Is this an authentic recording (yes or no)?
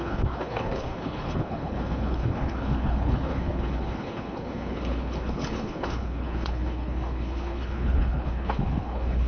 no